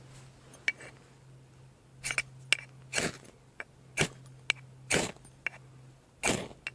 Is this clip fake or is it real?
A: real